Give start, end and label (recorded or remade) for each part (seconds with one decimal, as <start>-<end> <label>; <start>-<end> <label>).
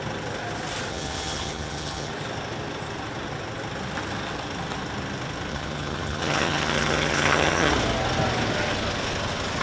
0.0-0.9 recorded; 0.9-2.1 remade; 2.1-5.5 recorded; 5.5-7.7 remade; 7.7-9.6 recorded